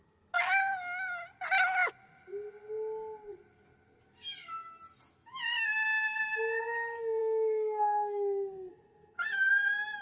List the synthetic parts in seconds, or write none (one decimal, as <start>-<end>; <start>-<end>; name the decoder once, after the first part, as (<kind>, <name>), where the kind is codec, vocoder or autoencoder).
7.2-8.7 (autoencoder, DAC-VAE)